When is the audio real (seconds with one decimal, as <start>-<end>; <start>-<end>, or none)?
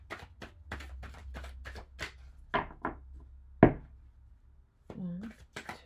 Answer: 0.0-5.9